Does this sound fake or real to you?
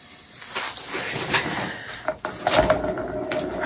real